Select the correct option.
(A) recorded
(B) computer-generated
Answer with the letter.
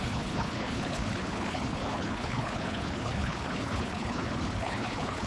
B